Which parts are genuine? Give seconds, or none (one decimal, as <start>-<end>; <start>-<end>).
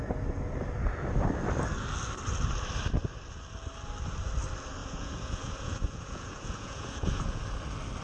0.0-4.8; 7.4-8.0